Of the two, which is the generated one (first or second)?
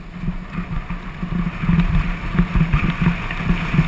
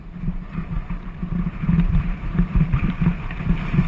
second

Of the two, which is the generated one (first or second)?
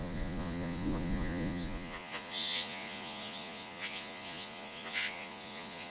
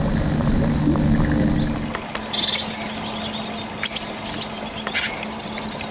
first